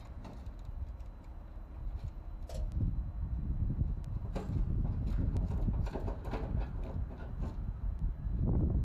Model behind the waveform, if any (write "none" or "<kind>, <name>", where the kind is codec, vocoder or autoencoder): none